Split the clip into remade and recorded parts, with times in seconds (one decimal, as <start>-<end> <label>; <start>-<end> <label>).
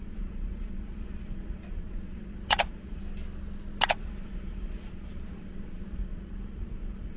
0.0-3.0 remade; 3.0-3.9 recorded; 3.9-7.2 remade